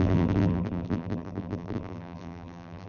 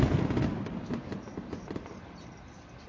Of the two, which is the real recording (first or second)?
second